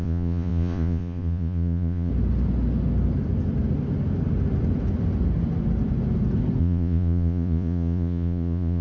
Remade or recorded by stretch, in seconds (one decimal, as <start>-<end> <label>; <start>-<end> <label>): 0.0-2.1 remade; 2.1-6.6 recorded; 6.6-8.8 remade